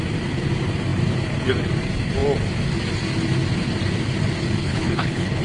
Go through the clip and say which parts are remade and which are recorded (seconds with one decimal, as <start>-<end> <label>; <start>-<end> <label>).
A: 0.0-4.6 recorded; 4.6-5.4 remade